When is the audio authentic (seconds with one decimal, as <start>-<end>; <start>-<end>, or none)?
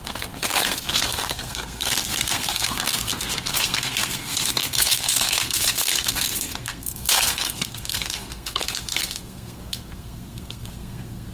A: none